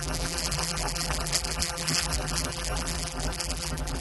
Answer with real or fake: fake